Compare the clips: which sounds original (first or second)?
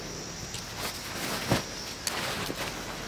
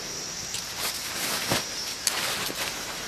first